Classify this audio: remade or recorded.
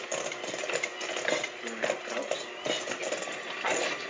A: recorded